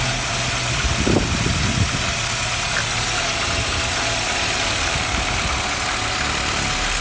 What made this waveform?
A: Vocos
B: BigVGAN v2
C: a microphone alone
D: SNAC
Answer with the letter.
C